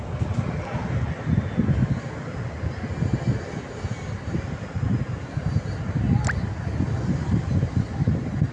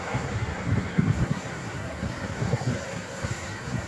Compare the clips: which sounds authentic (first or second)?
first